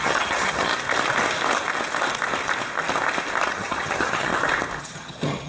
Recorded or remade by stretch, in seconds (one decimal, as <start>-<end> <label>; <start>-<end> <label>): 0.0-0.7 remade; 0.7-3.5 recorded; 3.5-4.3 remade; 4.3-4.8 recorded; 4.8-5.5 remade